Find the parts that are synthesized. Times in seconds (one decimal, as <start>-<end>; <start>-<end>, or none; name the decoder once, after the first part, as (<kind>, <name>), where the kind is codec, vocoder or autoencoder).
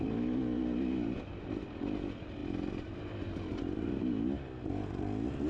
none